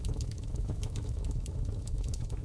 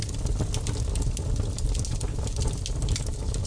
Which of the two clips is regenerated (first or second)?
first